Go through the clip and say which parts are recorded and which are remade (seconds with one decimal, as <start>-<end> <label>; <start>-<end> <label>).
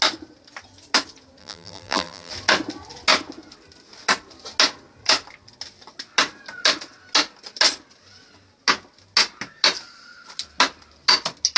0.0-1.4 recorded; 1.4-2.3 remade; 2.3-11.6 recorded